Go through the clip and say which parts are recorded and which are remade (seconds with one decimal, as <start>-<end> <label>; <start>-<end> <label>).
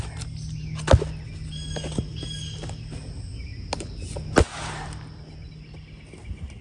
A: 0.0-6.6 recorded